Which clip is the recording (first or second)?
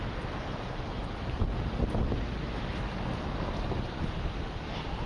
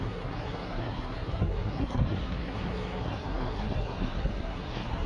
first